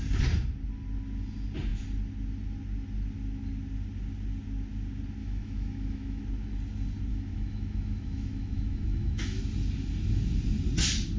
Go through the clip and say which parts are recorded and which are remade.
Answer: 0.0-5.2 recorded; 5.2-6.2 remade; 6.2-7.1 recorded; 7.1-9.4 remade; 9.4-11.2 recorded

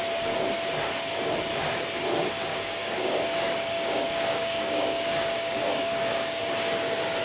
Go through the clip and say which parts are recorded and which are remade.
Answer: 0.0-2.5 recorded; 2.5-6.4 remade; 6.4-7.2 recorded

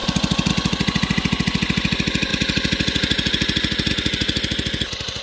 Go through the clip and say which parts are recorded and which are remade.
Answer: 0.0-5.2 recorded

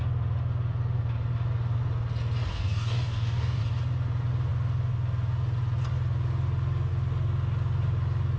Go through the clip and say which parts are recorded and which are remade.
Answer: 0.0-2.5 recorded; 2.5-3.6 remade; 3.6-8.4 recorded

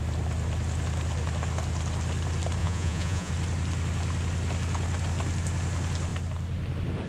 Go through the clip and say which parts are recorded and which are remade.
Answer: 0.0-2.6 recorded; 2.6-3.3 remade; 3.3-7.1 recorded

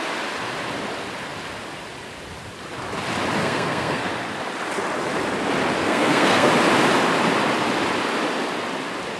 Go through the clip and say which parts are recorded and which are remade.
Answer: 0.0-3.4 recorded; 3.4-4.1 remade; 4.1-5.8 recorded; 5.8-6.5 remade; 6.5-9.2 recorded

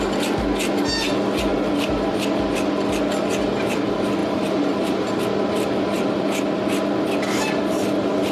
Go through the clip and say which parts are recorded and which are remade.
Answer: 0.0-4.2 recorded; 4.2-5.2 remade; 5.2-8.3 recorded

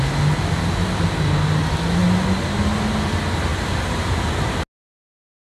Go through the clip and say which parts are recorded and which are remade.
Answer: 0.0-5.4 recorded